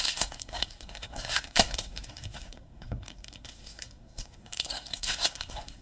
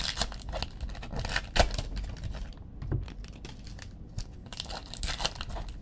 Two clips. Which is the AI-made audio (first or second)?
first